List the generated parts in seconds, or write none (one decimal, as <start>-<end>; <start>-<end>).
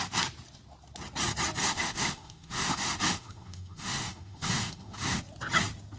1.6-5.2